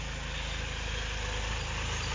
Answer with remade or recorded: recorded